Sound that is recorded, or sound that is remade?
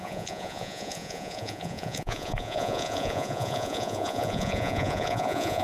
remade